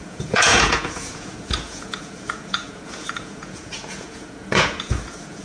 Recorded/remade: remade